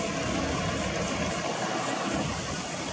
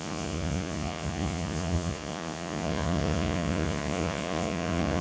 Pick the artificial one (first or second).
second